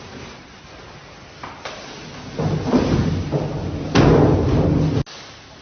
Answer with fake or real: real